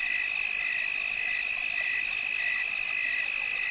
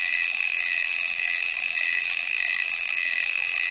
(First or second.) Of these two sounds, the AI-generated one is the second